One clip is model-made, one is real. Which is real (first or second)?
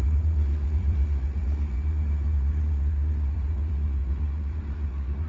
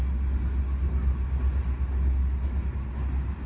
second